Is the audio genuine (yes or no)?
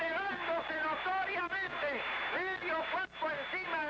yes